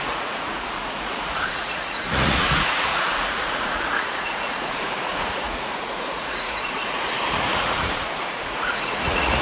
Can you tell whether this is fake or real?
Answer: fake